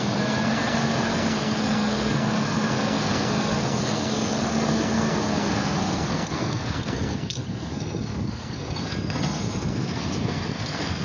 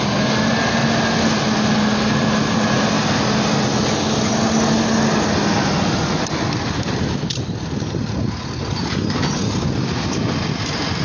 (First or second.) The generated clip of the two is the first